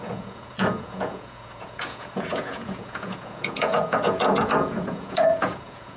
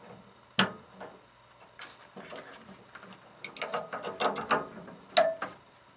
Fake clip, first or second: first